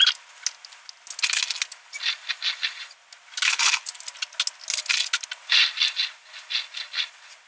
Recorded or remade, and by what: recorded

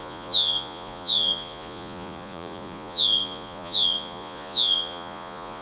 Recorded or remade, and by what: remade, vocoder, Vocos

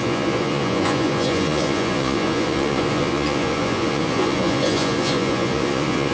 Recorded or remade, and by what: remade, vocoder, Vocos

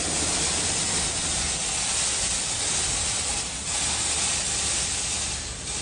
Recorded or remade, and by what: recorded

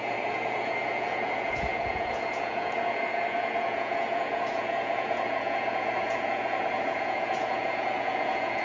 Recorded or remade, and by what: remade, vocoder, Vocos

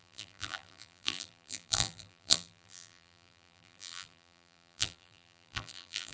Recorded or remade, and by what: remade, vocoder, BigVGAN v2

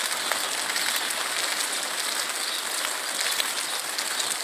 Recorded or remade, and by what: remade, vocoder, BigVGAN v2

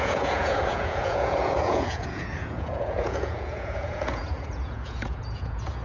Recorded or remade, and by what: remade, vocoder, Vocos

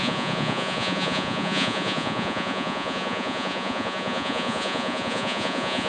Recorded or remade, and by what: remade, vocoder, Vocos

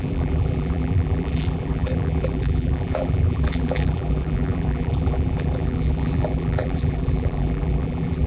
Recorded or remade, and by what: remade, vocoder, BigVGAN v2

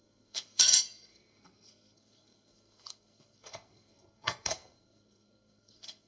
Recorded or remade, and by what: remade, codec, SNAC